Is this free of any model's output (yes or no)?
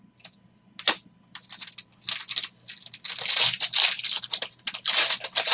yes